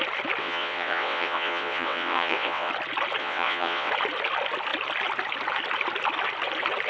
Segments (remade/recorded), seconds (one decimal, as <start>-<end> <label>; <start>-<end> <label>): 0.0-0.4 recorded; 0.4-2.7 remade; 2.7-3.2 recorded; 3.2-3.9 remade; 3.9-6.9 recorded